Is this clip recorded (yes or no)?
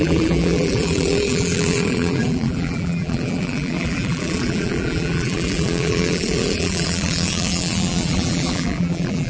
no